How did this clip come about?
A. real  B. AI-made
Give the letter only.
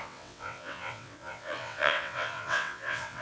B